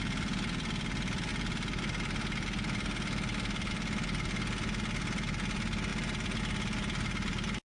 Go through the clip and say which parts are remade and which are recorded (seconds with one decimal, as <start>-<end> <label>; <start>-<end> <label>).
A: 0.0-7.6 recorded